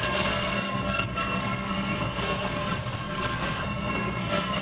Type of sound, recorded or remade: remade